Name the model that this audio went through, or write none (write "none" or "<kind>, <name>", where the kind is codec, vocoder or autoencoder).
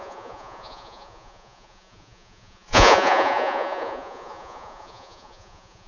vocoder, Vocos